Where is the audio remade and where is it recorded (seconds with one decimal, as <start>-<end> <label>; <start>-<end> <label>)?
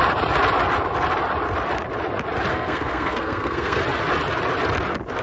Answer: 0.0-2.5 recorded; 2.5-3.8 remade; 3.8-5.2 recorded